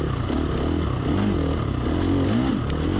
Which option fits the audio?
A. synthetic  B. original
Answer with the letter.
B